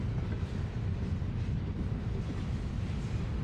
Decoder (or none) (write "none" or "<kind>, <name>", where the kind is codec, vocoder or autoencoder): none